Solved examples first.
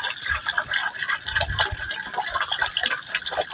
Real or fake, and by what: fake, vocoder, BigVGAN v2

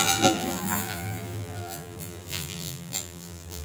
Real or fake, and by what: fake, vocoder, BigVGAN v2